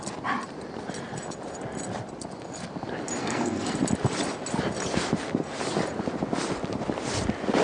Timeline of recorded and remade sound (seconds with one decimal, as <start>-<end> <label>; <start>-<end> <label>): 0.0-3.2 recorded; 3.2-3.8 remade; 3.8-7.6 recorded